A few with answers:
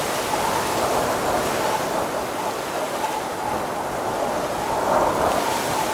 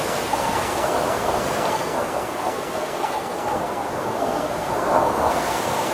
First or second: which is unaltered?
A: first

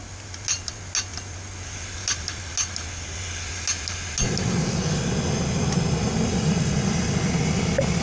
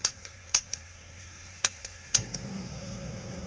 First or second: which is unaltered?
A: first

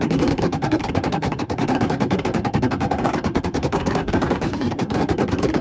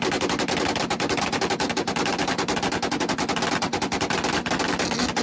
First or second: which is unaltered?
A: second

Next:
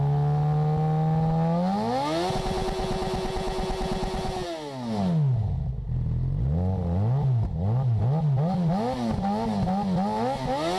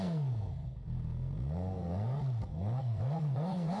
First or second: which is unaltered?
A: first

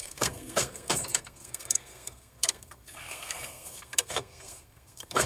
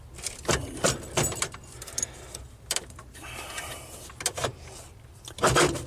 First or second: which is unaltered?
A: second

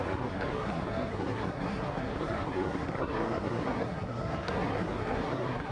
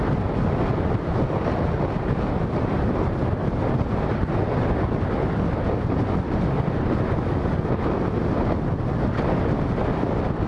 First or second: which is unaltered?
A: second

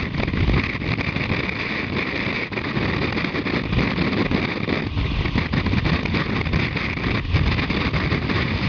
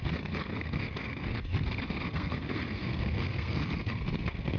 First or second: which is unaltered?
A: first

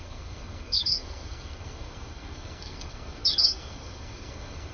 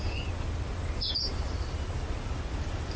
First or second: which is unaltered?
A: second